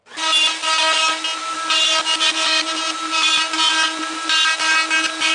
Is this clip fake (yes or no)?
no